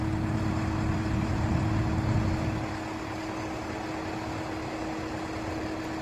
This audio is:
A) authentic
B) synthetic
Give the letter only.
A